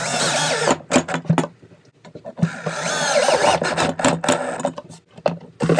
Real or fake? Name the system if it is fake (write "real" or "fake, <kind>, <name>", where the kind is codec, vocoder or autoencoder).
real